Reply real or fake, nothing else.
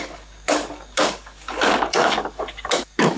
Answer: fake